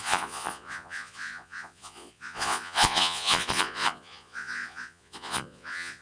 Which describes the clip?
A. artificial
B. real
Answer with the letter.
A